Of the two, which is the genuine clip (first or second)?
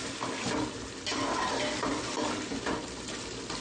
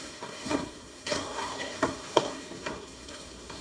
first